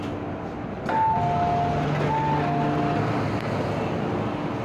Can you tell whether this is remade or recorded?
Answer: recorded